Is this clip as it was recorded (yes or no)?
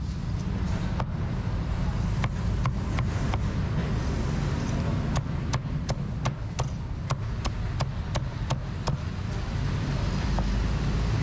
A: yes